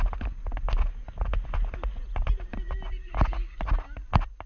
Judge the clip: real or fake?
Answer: real